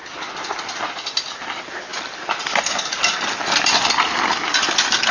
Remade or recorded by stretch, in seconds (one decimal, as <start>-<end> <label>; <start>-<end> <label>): 0.0-5.1 recorded